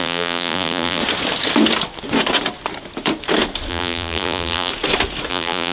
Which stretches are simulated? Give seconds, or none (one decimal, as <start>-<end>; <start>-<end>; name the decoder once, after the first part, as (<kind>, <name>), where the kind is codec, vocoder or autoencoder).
0.0-1.0 (vocoder, BigVGAN v2); 3.7-4.7; 5.3-5.7